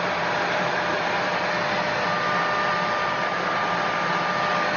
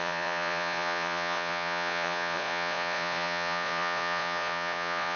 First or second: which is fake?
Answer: second